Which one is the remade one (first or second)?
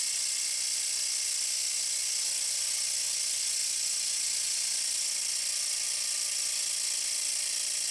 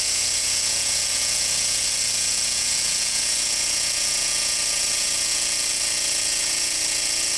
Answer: second